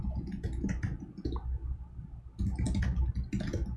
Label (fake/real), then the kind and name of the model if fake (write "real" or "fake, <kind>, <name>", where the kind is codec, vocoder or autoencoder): real